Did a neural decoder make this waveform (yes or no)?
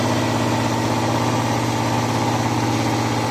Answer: no